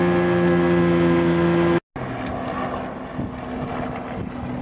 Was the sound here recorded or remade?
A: recorded